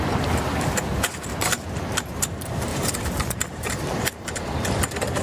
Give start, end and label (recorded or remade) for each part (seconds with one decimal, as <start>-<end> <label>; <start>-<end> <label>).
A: 0.0-2.7 recorded; 2.7-4.8 remade; 4.8-5.2 recorded